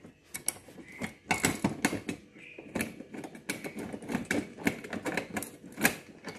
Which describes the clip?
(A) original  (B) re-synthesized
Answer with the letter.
A